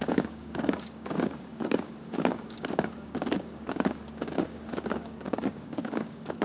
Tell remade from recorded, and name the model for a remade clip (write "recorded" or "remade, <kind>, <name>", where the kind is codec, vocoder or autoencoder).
remade, codec, DAC